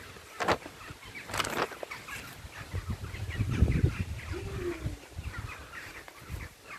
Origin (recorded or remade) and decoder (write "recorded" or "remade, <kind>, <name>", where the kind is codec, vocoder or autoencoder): recorded